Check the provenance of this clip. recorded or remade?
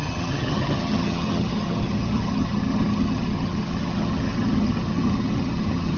remade